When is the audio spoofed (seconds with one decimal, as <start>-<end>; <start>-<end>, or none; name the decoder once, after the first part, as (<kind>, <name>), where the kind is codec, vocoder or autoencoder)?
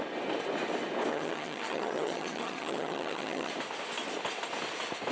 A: 1.1-3.5 (vocoder, HiFi-GAN)